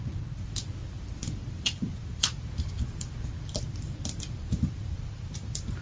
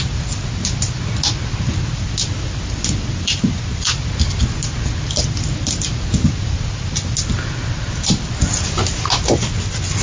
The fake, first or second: first